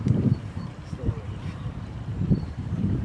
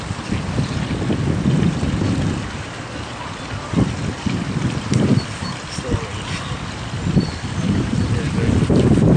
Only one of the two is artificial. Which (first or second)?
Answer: first